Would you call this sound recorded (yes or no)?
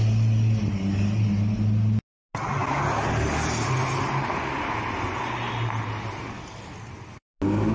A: yes